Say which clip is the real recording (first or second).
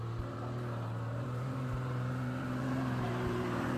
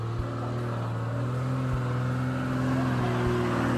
second